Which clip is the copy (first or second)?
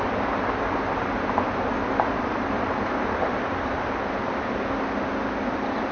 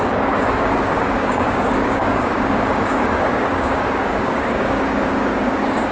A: second